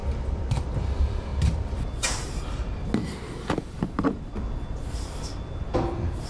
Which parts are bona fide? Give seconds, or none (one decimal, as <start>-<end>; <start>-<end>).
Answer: 0.0-6.3